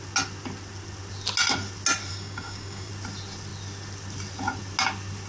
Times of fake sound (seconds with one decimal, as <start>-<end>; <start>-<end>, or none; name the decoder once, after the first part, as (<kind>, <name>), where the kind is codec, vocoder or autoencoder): 2.1-2.9 (codec, DAC)